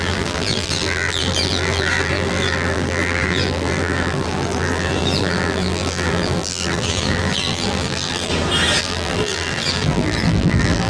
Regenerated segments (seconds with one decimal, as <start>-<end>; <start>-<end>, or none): 0.0-8.3; 8.8-10.9